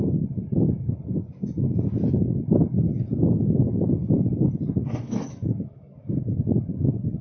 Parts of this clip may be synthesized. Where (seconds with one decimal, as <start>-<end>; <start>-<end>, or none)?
4.8-6.2